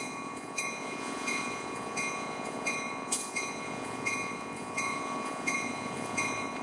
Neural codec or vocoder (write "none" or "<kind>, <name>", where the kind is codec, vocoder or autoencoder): vocoder, Vocos